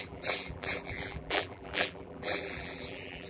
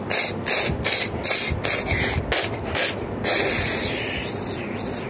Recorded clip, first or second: second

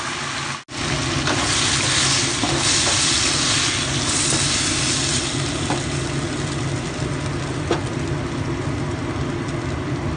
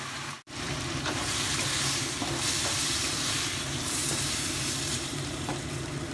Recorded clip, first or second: first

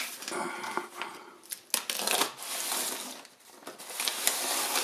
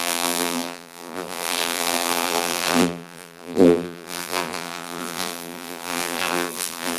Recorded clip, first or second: first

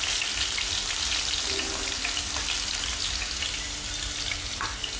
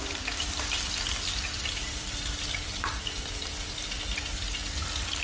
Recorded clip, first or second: first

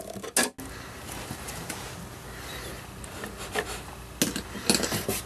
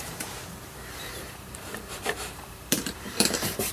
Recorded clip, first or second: first